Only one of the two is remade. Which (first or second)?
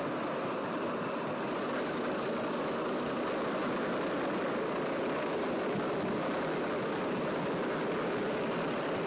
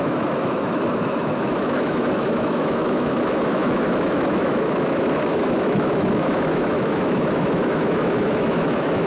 second